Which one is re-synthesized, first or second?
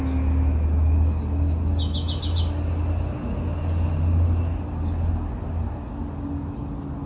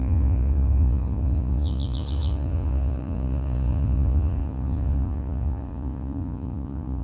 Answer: second